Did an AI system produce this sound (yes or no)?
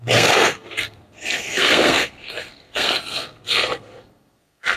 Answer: yes